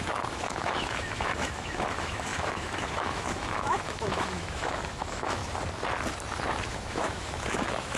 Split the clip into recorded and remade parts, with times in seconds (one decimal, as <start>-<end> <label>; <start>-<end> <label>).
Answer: 0.0-5.4 remade; 5.4-6.7 recorded; 6.7-8.0 remade